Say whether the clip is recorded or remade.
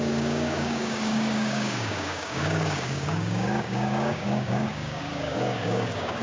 remade